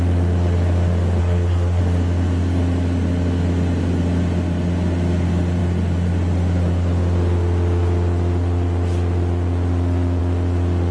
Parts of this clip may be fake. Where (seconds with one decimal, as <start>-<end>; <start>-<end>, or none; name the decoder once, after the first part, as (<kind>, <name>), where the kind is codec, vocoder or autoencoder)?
1.2-1.8 (codec, SNAC)